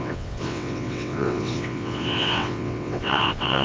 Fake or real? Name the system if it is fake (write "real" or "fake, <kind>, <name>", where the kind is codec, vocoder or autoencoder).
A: fake, vocoder, WaveNeXt